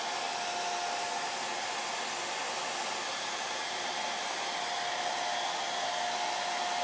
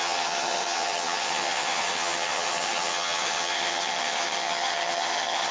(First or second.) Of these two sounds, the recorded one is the first